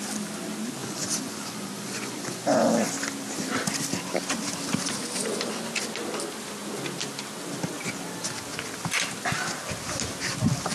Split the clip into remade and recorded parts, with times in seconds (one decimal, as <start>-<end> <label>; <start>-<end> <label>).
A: 0.0-0.8 recorded; 0.8-2.7 remade; 2.7-10.7 recorded

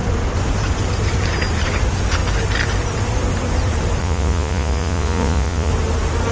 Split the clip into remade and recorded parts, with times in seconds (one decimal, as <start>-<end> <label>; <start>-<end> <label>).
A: 0.0-4.0 recorded; 4.0-5.7 remade; 5.7-6.3 recorded

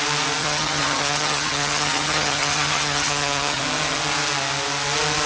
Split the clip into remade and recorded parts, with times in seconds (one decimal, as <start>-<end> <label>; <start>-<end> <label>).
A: 0.0-0.4 recorded; 0.4-3.6 remade; 3.6-5.3 recorded

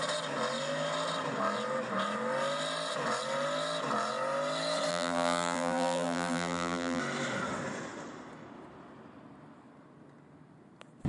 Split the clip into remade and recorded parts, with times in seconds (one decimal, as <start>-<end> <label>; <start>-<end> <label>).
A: 0.0-4.9 recorded; 4.9-7.0 remade; 7.0-11.1 recorded

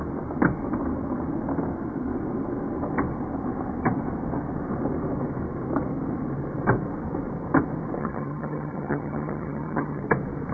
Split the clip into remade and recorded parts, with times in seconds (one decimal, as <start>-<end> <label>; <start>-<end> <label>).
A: 0.0-8.0 recorded; 8.0-10.0 remade; 10.0-10.5 recorded

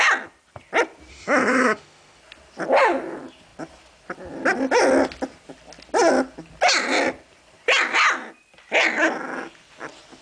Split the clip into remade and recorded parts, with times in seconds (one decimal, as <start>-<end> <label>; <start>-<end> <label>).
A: 0.0-1.1 recorded; 1.1-2.2 remade; 2.2-10.2 recorded

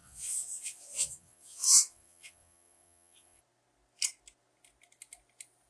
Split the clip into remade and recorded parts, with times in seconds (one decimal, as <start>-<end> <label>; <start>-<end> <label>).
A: 0.0-3.4 remade; 3.4-5.7 recorded